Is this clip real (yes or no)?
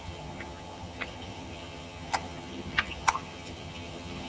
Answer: no